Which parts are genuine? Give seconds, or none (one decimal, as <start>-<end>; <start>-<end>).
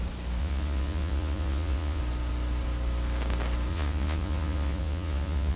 0.0-0.4; 2.0-3.7